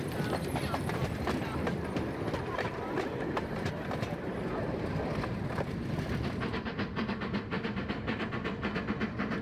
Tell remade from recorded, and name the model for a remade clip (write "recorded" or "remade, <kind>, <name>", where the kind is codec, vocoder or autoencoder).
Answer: remade, vocoder, BigVGAN v2